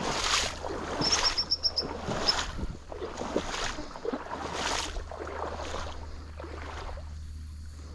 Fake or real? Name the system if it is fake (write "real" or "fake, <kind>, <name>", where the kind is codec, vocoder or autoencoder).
real